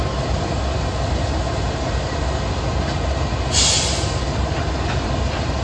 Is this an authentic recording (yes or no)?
yes